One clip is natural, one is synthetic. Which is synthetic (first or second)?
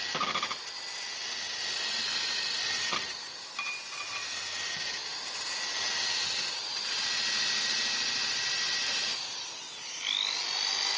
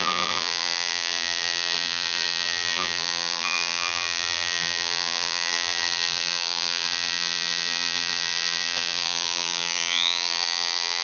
second